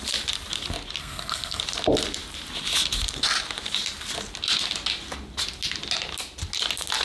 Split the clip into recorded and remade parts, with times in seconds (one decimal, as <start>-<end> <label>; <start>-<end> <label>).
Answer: 0.0-1.0 recorded; 1.0-1.6 remade; 1.6-7.0 recorded